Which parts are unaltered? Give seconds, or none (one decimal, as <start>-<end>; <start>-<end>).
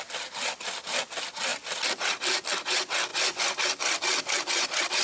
0.0-3.1; 3.6-5.0